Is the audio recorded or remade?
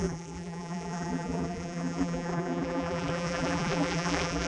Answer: remade